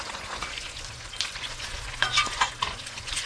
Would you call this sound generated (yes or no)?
yes